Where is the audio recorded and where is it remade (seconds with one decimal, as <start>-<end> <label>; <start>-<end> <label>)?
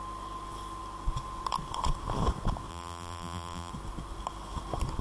0.0-2.7 recorded; 2.7-3.7 remade; 3.7-5.0 recorded